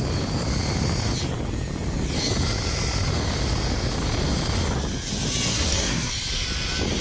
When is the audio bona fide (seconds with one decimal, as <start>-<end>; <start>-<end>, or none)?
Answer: 0.0-5.5; 6.1-7.0

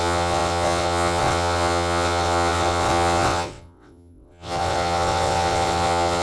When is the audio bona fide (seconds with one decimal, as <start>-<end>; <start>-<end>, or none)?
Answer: none

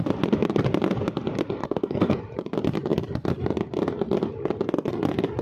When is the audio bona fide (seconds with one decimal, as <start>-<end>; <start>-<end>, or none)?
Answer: 0.0-1.6; 2.2-5.4

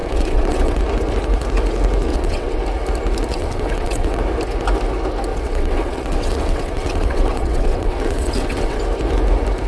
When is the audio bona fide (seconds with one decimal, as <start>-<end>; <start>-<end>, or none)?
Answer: 0.8-2.1; 2.6-3.3; 4.2-5.3; 8.8-9.7

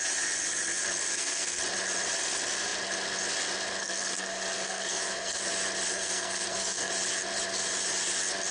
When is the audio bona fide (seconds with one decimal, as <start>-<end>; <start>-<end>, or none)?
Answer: 0.0-1.1; 1.6-3.8; 5.5-5.9; 6.9-8.5